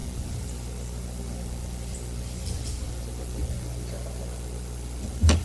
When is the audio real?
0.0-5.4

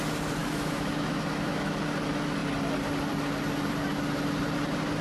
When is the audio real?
0.0-0.4; 1.8-5.0

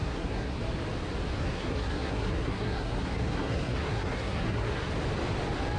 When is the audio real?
0.6-1.4; 4.9-5.8

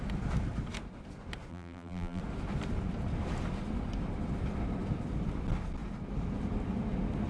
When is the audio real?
0.0-1.5; 2.2-7.3

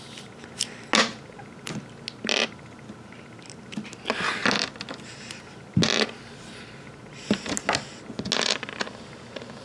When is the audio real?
0.0-9.6